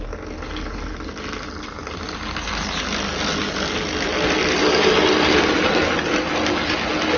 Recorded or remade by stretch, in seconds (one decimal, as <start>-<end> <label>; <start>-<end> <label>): 0.0-7.2 recorded